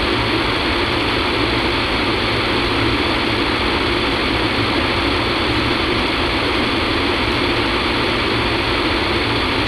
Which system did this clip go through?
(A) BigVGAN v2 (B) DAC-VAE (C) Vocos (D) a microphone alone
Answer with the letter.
D